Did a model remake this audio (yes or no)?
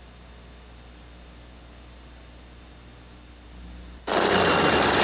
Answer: no